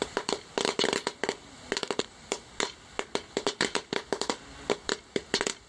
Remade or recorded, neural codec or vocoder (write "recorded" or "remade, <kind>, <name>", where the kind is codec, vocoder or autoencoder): recorded